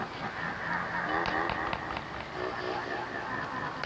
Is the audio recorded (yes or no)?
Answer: yes